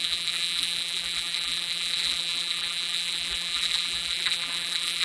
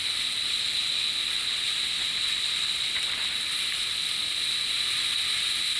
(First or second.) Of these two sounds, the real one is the second